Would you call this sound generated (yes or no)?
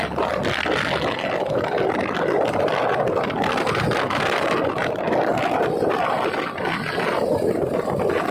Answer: no